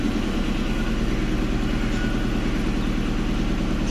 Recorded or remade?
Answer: recorded